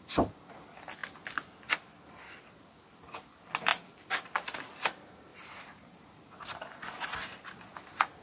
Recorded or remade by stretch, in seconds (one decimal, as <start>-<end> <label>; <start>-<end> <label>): 0.0-5.3 recorded; 5.3-6.1 remade; 6.1-8.2 recorded